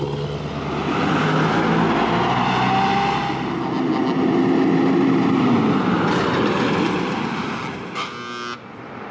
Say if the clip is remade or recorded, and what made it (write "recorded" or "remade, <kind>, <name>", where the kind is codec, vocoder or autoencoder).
recorded